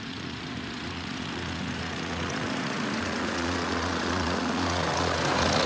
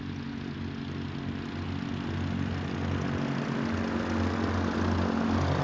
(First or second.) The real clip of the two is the second